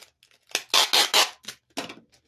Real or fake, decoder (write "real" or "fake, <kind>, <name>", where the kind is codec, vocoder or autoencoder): real